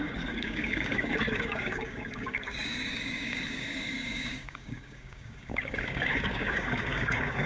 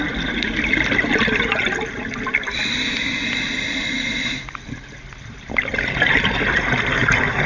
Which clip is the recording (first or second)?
second